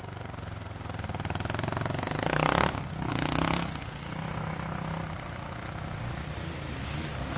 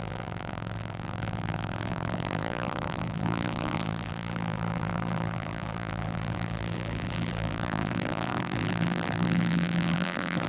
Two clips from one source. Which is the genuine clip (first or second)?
first